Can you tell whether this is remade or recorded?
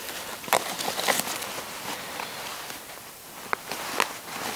recorded